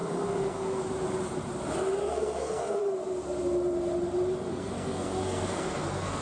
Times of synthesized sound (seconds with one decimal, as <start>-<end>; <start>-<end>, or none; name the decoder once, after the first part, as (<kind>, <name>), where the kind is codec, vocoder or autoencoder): 0.0-0.8 (codec, SNAC); 2.0-2.8; 4.5-6.2